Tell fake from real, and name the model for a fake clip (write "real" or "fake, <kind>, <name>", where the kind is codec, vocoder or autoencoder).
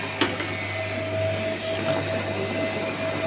real